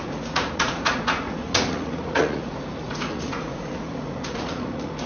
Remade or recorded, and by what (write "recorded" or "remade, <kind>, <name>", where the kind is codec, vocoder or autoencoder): remade, vocoder, Vocos